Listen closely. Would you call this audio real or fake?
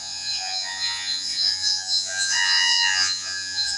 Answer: fake